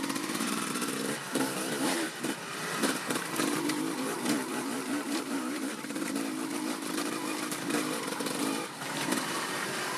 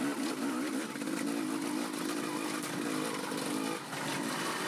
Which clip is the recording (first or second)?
second